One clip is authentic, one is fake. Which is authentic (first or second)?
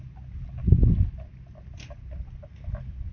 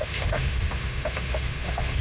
first